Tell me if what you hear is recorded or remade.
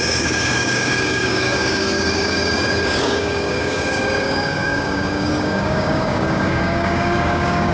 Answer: remade